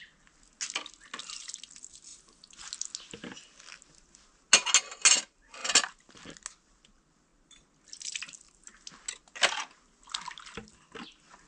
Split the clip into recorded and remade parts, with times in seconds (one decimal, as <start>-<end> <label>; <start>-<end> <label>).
0.0-11.5 recorded